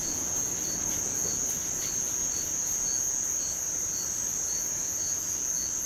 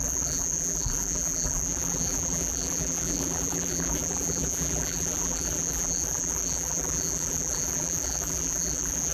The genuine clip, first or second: first